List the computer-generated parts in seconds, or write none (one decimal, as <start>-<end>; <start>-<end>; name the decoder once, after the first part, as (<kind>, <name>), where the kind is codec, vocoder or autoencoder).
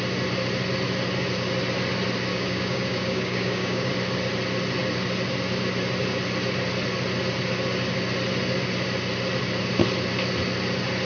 2.3-3.9 (codec, DAC)